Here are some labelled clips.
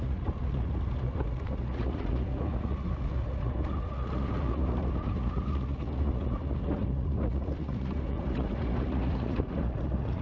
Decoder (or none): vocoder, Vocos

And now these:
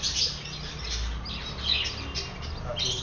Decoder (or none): none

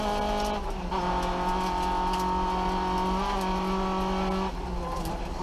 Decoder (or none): none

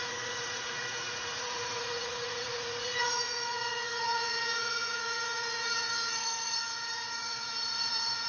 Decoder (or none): vocoder, Vocos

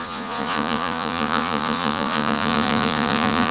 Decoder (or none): vocoder, Vocos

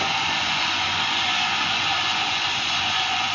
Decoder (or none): vocoder, Vocos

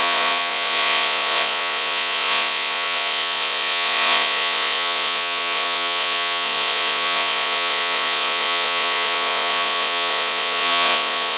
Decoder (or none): vocoder, Vocos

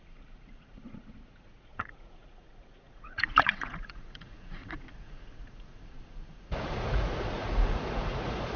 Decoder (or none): vocoder, Vocos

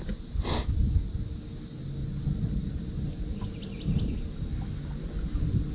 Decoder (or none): none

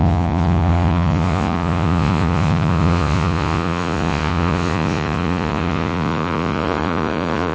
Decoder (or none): vocoder, Vocos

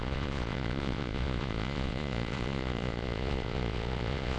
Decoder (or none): vocoder, Vocos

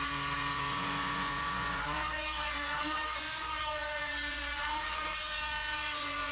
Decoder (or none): vocoder, Vocos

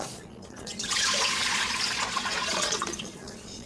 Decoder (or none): vocoder, Vocos